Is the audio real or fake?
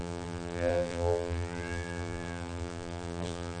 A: fake